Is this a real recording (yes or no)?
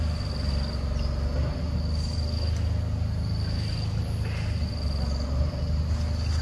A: yes